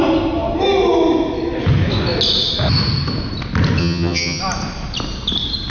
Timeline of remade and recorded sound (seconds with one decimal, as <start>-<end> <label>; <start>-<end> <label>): 0.0-3.8 recorded; 3.8-4.4 remade; 4.4-5.7 recorded